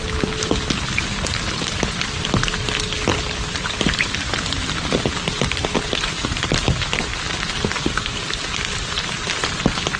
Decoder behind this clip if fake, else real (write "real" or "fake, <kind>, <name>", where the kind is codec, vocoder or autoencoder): real